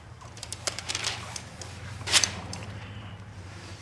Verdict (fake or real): fake